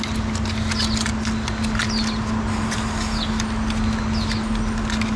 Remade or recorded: recorded